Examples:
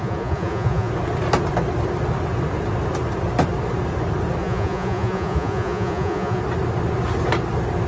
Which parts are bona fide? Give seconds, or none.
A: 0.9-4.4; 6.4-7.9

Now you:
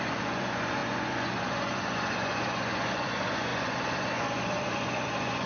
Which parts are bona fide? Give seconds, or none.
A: none

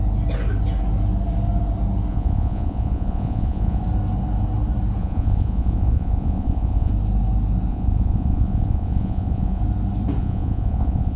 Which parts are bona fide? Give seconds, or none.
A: 0.0-2.1; 3.8-5.0; 6.9-7.7; 9.6-10.2